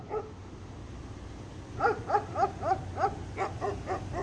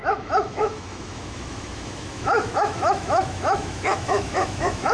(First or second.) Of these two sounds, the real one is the first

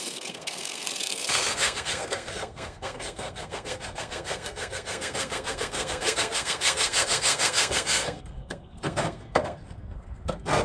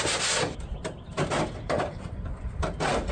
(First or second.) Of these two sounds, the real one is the second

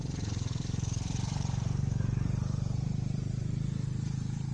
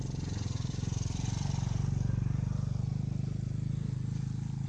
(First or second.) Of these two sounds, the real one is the second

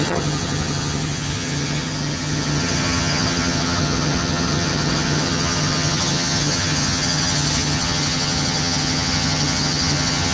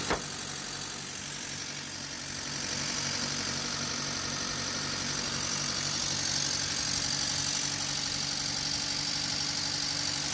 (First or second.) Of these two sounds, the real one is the second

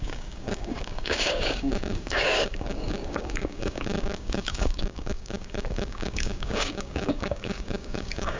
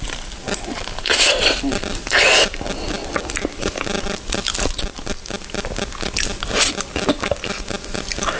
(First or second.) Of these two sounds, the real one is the second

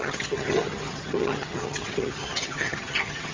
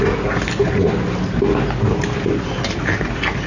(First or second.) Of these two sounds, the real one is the second